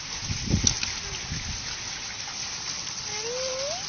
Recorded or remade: recorded